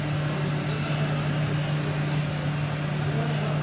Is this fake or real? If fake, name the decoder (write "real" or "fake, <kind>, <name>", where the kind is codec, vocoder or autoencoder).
real